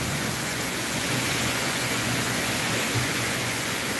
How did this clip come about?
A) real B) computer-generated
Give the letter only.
B